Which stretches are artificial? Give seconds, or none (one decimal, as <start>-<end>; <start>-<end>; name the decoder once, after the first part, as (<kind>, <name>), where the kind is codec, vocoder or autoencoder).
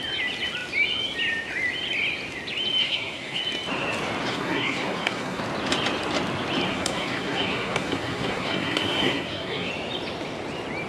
2.8-3.4 (codec, SNAC); 4.3-5.4; 6.7-9.7